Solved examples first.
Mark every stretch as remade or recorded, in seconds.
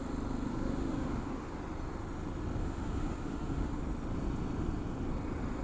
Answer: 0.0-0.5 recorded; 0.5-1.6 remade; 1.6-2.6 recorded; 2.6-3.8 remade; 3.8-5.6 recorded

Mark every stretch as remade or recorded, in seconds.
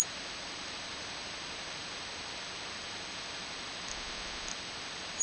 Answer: 0.0-3.9 recorded; 3.9-4.5 remade; 4.5-5.2 recorded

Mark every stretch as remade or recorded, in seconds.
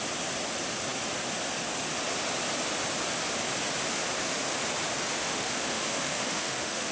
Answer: 0.0-5.2 recorded; 5.2-6.9 remade